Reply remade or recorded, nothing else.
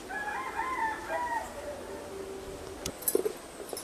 recorded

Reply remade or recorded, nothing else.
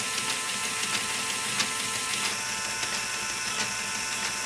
recorded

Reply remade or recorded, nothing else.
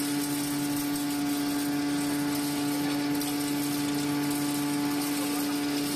recorded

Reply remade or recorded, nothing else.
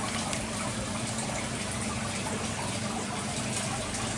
recorded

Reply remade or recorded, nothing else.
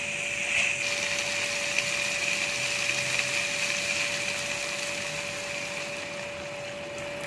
recorded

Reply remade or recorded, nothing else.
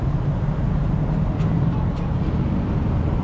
recorded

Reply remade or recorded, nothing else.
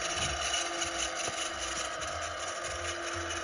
recorded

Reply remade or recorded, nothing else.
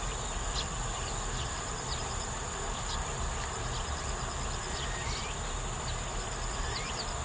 recorded